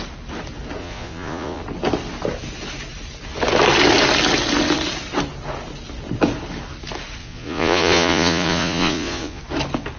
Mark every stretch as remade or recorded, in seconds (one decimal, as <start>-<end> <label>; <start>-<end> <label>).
0.0-0.8 recorded; 0.8-1.6 remade; 1.6-7.2 recorded; 7.2-9.4 remade; 9.4-10.0 recorded